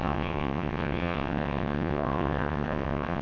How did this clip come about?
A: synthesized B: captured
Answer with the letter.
A